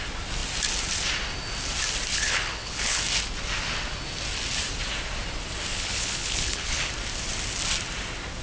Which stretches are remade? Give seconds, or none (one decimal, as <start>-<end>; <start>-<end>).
2.1-3.0; 5.7-6.9